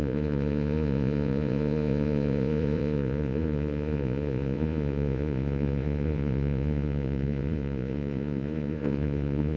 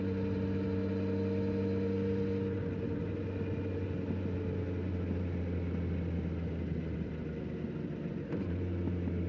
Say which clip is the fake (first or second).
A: first